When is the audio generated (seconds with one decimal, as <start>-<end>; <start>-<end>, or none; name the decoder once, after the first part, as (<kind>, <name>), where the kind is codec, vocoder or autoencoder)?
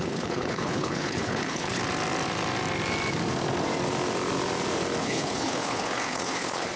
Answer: 0.0-1.8 (codec, HILCodec); 5.0-6.8